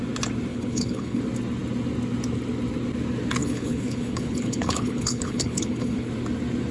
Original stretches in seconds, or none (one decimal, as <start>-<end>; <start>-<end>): 0.0-0.5; 1.2-3.4; 6.1-6.7